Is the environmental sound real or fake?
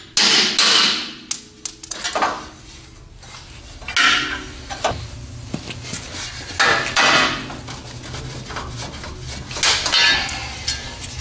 real